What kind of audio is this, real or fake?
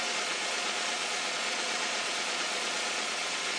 fake